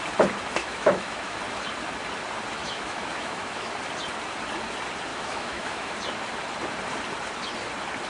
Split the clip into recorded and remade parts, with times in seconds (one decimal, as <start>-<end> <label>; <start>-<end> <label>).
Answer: 0.0-0.6 recorded; 0.6-1.4 remade; 1.4-2.6 recorded; 2.6-3.7 remade; 3.7-5.1 recorded; 5.1-5.9 remade; 5.9-8.1 recorded